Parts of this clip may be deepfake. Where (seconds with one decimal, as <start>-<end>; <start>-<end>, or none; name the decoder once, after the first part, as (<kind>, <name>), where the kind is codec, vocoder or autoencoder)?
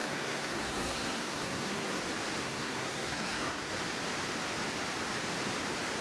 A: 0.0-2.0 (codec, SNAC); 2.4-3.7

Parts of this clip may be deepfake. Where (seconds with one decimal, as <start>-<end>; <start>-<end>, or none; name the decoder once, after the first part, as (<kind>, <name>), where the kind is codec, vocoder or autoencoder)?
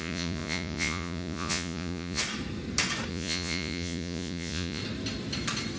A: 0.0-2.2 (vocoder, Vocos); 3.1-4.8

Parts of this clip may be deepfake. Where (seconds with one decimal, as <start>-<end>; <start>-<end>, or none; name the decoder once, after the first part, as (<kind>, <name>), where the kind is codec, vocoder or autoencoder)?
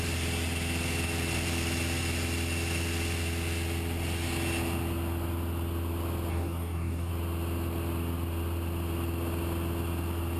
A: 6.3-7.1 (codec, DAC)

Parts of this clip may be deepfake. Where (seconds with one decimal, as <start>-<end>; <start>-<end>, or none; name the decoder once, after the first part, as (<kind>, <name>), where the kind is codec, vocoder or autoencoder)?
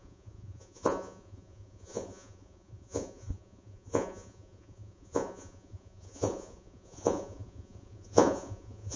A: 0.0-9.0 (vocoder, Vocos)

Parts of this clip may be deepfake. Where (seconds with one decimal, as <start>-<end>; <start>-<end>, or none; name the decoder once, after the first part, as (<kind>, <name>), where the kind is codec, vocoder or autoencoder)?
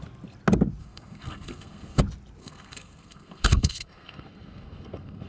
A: 0.8-2.0 (codec, SNAC); 2.4-5.3